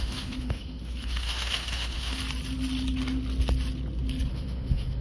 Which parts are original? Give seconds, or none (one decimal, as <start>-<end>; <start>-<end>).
2.2-4.3

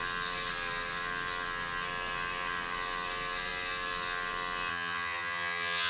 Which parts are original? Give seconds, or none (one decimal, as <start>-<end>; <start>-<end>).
0.0-4.7

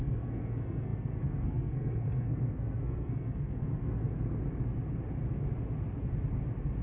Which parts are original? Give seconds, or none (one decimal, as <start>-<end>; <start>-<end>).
4.0-6.8

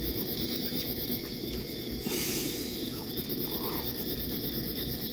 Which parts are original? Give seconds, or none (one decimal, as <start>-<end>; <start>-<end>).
none